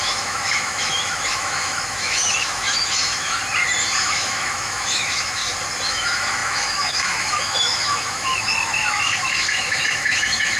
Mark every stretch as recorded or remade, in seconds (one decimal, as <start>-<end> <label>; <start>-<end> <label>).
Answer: 0.0-3.4 remade; 3.4-4.0 recorded; 4.0-5.4 remade; 5.4-5.9 recorded; 5.9-10.6 remade